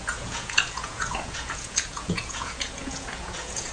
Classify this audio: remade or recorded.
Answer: remade